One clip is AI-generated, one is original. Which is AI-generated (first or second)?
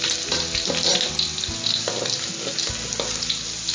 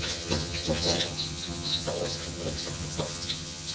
second